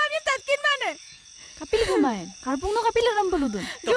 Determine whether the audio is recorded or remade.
remade